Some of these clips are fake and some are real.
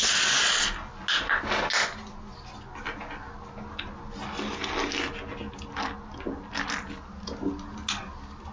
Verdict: real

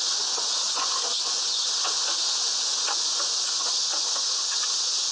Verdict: fake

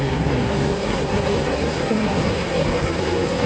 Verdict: fake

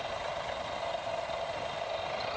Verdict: real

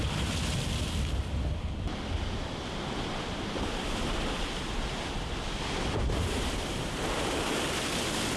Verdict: fake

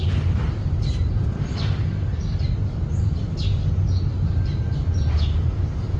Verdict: real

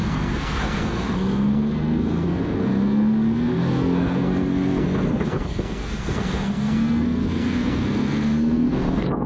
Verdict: fake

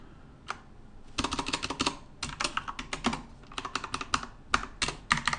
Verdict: real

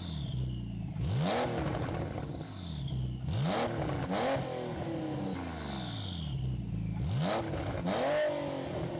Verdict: real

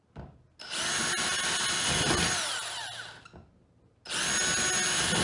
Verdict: real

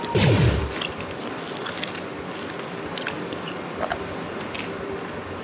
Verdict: real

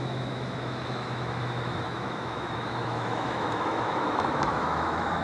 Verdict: fake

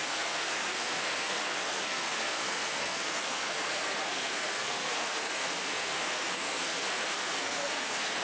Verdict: fake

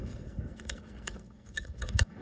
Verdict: fake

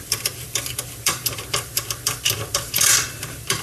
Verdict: fake